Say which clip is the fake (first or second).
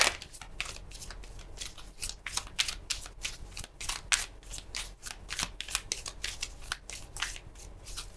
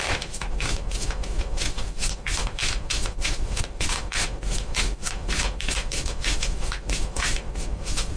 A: second